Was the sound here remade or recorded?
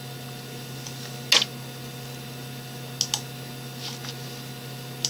recorded